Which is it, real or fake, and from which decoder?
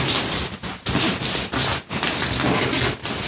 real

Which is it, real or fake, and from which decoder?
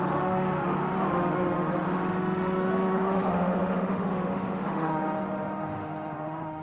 fake, autoencoder, DAC-VAE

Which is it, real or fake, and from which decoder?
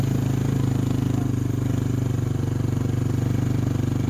real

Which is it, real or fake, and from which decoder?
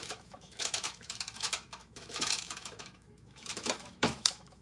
fake, autoencoder, DAC-VAE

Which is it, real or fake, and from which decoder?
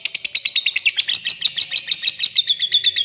real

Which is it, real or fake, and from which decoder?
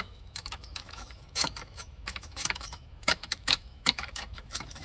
fake, autoencoder, DAC-VAE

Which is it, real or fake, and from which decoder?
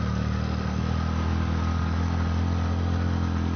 real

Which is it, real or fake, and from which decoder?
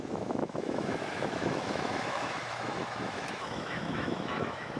fake, autoencoder, DAC-VAE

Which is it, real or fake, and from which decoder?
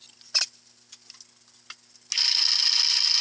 real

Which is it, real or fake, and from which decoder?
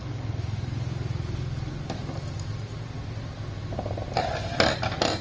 real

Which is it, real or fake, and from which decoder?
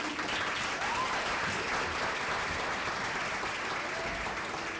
real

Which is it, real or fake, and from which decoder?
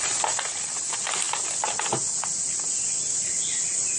real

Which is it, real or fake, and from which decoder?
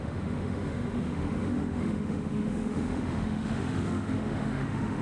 fake, autoencoder, DAC-VAE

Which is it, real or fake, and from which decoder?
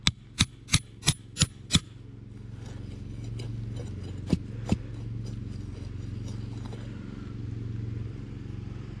real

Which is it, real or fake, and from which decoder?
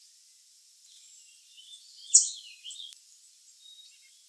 real